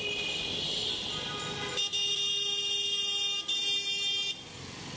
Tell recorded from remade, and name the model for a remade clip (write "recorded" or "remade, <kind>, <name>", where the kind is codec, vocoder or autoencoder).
recorded